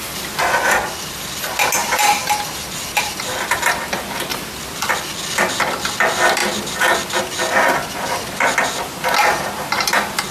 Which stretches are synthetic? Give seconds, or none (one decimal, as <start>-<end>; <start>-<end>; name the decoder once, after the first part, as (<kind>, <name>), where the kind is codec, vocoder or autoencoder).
1.8-3.7 (vocoder, BigVGAN v2); 4.3-4.9